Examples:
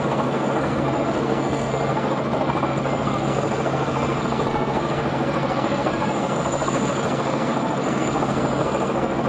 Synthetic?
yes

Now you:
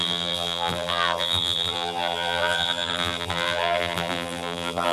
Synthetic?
yes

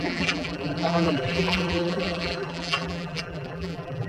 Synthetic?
yes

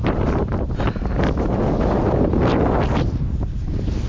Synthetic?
no